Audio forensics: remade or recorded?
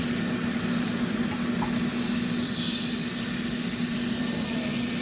recorded